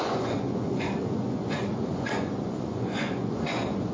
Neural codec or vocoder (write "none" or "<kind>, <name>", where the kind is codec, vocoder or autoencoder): vocoder, Vocos